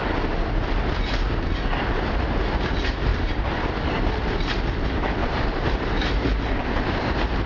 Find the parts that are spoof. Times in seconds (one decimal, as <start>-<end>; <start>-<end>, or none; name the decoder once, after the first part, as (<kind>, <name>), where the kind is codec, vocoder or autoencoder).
3.1-4.3 (vocoder, BigVGAN v2); 5.2-7.5

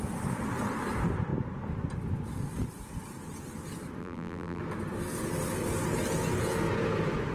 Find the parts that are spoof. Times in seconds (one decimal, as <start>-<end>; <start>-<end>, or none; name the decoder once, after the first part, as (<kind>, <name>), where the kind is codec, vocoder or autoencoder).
4.0-4.6 (vocoder, BigVGAN v2)